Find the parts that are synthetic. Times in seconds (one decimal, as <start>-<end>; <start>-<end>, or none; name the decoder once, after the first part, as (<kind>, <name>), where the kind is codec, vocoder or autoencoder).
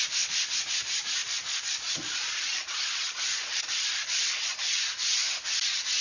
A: 1.2-4.8 (vocoder, Vocos)